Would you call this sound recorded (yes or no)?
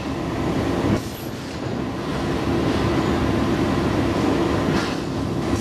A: yes